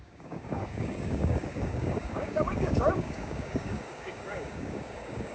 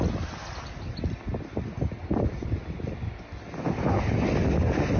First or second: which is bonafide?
second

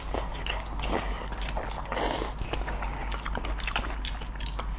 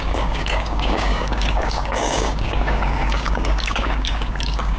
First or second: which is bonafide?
first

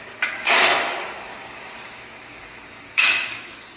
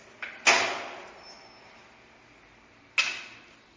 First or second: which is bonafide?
second